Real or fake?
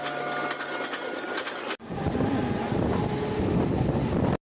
real